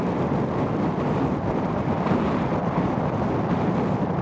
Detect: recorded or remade recorded